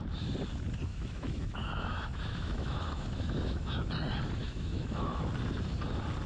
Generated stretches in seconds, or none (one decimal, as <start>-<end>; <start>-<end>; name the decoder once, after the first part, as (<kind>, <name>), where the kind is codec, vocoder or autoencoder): 0.9-3.9 (autoencoder, DAC-VAE); 4.4-5.3